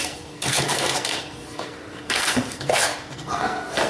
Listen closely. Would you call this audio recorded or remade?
remade